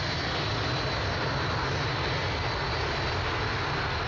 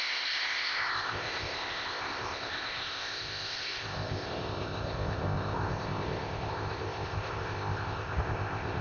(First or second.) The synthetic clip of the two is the second